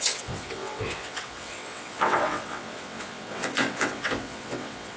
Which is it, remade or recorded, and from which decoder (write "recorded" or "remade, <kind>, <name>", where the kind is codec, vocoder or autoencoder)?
remade, vocoder, WaveNeXt